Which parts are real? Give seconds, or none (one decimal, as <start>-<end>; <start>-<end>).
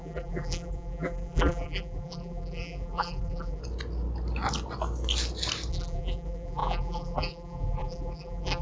3.6-5.7